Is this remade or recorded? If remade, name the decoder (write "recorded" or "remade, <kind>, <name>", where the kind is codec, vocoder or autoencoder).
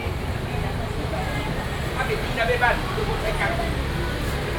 recorded